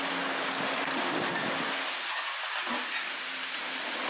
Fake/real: real